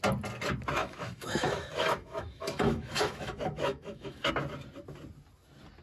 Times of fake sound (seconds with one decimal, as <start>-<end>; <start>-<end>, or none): 0.8-4.3